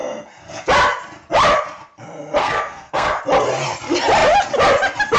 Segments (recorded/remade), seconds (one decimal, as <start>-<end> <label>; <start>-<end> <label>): 0.0-2.4 recorded; 2.4-3.2 remade; 3.2-5.2 recorded